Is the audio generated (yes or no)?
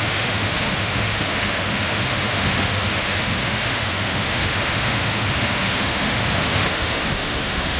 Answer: yes